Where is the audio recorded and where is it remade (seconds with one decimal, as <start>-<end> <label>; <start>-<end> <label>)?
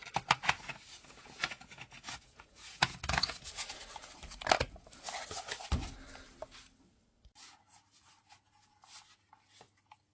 0.0-0.9 recorded; 0.9-3.8 remade; 3.8-10.1 recorded